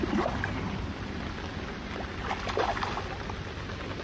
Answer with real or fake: real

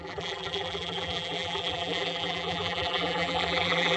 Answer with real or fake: fake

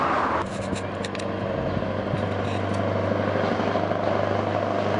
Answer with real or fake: real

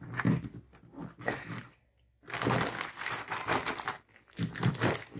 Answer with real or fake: real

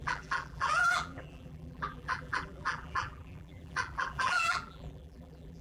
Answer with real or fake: fake